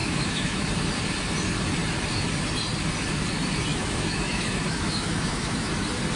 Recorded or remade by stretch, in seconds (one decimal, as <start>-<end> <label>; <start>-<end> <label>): 0.0-0.7 remade; 0.7-3.7 recorded; 3.7-5.7 remade; 5.7-6.2 recorded